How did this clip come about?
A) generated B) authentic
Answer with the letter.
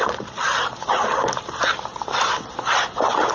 B